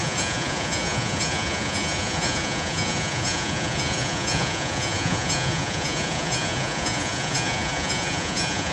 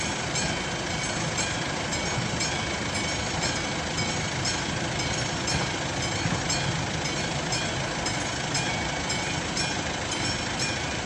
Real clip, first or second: second